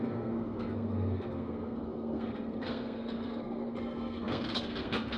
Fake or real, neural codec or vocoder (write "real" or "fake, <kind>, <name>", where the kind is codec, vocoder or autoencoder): fake, codec, SNAC